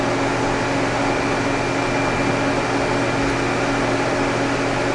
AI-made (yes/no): no